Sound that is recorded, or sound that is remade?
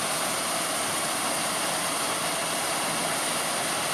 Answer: recorded